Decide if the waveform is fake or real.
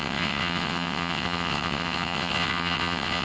fake